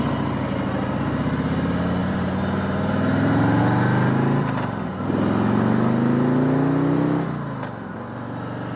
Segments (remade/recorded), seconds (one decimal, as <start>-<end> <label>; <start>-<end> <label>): 0.0-2.0 recorded; 2.0-3.6 remade; 3.6-8.8 recorded